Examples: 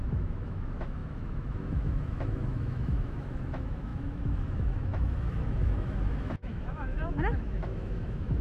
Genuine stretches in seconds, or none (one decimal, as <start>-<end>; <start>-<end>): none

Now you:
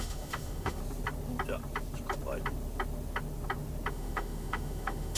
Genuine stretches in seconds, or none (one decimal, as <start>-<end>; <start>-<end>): 0.8-3.9

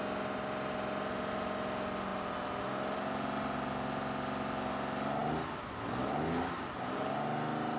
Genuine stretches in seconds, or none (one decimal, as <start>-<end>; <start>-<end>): 0.0-7.8